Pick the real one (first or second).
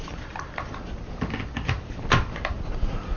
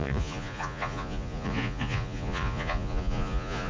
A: first